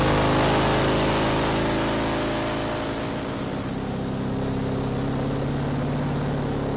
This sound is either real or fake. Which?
real